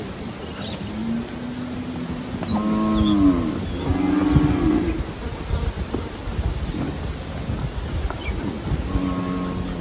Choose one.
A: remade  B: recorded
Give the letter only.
B